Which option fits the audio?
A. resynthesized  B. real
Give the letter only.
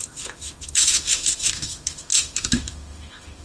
A